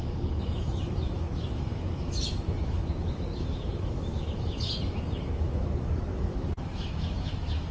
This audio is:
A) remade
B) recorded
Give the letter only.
A